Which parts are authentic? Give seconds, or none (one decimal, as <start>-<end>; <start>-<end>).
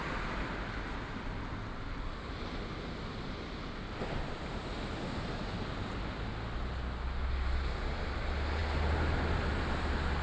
0.0-10.2